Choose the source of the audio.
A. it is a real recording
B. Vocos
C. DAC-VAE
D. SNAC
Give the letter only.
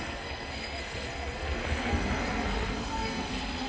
D